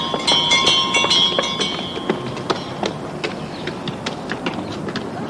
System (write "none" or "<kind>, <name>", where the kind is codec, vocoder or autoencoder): none